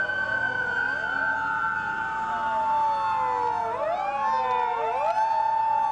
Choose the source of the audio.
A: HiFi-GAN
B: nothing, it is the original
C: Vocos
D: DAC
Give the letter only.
B